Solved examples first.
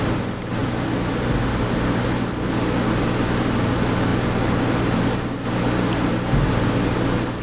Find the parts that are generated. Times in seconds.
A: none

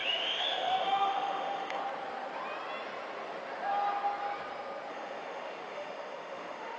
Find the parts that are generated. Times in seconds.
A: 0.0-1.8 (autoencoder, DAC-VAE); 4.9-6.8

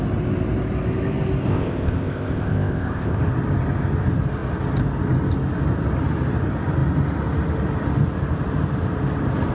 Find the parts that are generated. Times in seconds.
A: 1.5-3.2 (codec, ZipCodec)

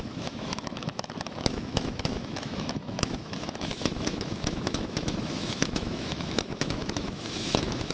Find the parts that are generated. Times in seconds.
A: 0.0-7.9 (autoencoder, DAC-VAE)